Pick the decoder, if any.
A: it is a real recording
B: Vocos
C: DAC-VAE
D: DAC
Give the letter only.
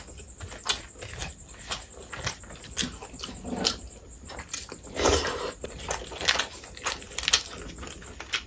A